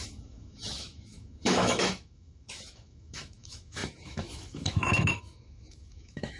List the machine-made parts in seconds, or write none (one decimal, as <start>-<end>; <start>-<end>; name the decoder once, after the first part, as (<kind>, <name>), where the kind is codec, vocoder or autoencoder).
0.0-6.4 (autoencoder, DAC-VAE)